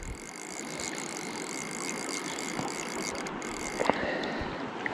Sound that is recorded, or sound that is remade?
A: recorded